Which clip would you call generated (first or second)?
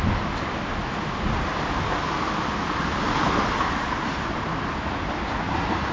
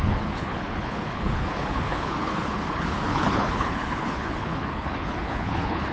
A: second